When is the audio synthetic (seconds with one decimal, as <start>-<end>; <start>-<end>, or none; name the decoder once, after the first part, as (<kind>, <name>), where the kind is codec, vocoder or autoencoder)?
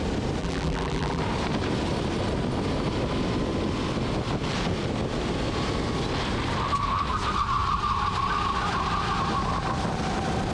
0.4-1.2 (vocoder, BigVGAN v2)